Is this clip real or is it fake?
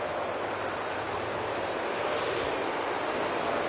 real